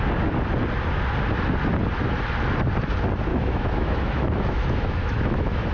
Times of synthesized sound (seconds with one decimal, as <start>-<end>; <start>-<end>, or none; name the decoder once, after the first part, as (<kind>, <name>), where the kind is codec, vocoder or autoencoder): 3.3-5.7 (autoencoder, DAC-VAE)